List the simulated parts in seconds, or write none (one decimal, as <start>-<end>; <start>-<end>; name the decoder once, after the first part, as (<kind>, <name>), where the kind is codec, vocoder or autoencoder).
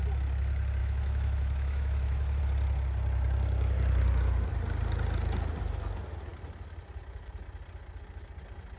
0.8-2.4 (autoencoder, DAC-VAE)